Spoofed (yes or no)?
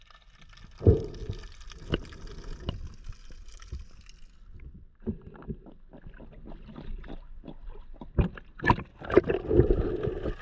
no